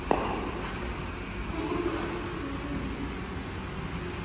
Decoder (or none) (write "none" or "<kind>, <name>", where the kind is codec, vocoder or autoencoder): none